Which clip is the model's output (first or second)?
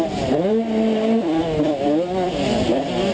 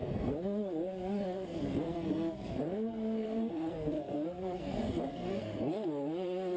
second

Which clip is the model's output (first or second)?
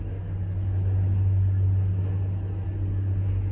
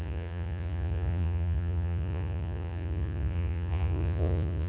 second